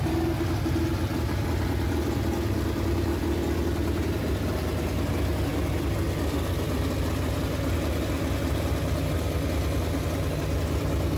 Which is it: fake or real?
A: real